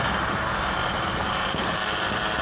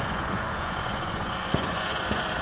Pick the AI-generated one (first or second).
second